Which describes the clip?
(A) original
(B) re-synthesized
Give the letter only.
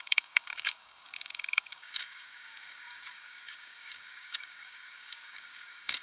B